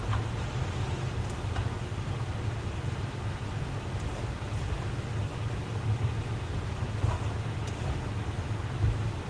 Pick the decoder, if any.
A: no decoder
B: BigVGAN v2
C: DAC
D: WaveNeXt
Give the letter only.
A